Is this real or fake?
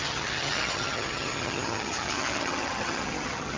fake